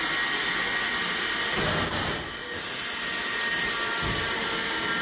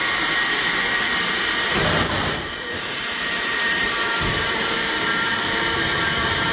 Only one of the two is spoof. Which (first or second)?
second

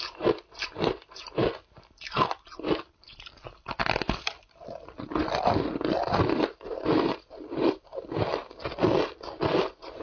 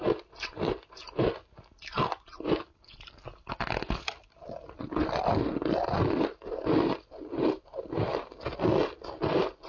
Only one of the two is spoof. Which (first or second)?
first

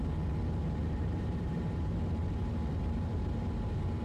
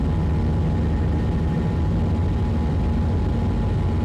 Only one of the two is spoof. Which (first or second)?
first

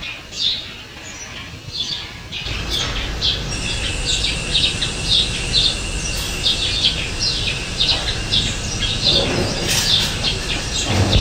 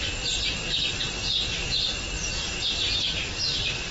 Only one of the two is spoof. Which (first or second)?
second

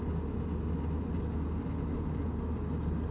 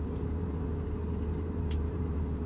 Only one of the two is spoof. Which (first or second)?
second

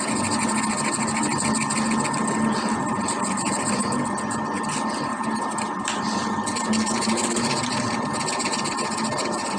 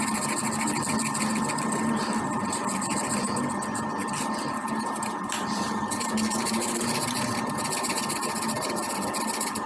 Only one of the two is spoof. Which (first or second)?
second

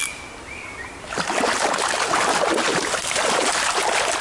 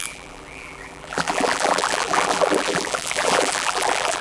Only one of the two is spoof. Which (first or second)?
second